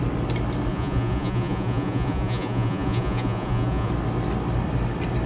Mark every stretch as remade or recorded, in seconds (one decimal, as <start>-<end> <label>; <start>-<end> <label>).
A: 0.0-0.7 recorded; 0.7-3.9 remade; 3.9-5.3 recorded